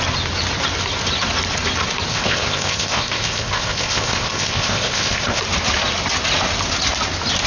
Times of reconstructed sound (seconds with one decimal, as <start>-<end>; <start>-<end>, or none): 2.1-5.4